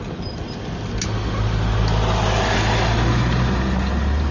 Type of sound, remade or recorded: recorded